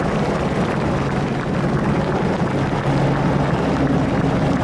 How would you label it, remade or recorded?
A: recorded